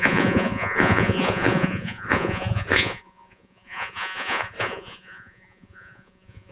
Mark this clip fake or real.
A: fake